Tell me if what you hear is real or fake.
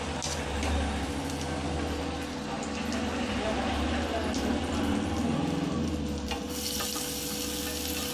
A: real